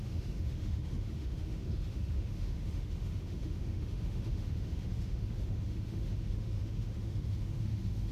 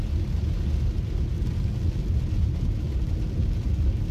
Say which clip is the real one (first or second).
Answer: second